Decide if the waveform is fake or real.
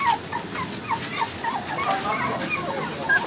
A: real